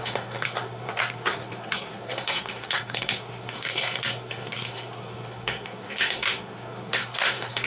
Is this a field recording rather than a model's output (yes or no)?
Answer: no